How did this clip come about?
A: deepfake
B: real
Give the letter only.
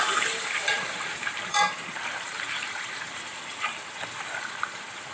A